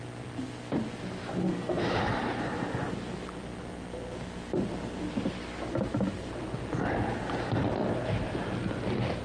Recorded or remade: recorded